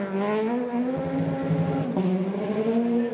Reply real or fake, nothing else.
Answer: real